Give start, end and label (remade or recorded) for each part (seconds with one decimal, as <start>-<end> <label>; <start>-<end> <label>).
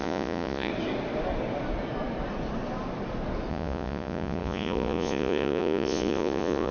0.0-0.7 remade; 0.7-3.5 recorded; 3.5-6.7 remade